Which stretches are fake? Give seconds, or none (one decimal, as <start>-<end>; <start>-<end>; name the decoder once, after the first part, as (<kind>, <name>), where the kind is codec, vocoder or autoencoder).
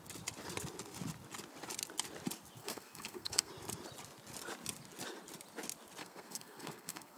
2.6-3.5 (codec, SNAC); 6.0-7.2